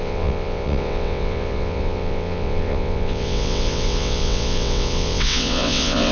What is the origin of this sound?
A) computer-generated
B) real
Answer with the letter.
A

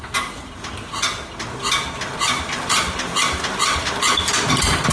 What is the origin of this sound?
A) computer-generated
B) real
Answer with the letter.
B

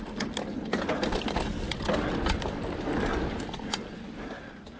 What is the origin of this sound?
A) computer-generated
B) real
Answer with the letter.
B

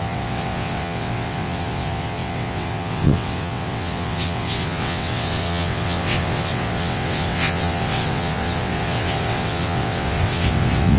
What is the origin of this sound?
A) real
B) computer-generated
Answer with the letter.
B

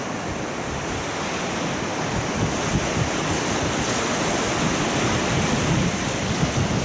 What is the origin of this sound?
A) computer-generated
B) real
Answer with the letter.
B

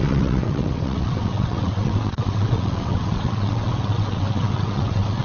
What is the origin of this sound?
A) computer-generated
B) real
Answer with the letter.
A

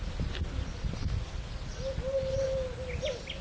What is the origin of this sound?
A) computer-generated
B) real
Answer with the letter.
B